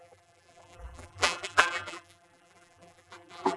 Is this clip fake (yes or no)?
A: yes